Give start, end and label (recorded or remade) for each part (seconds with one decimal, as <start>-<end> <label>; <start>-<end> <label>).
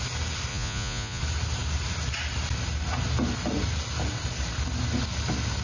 0.0-0.5 recorded; 0.5-1.2 remade; 1.2-5.6 recorded